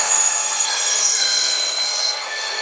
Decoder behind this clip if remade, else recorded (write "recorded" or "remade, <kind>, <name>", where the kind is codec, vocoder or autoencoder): remade, codec, SNAC